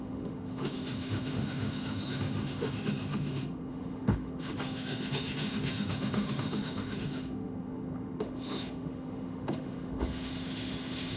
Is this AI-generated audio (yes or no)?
yes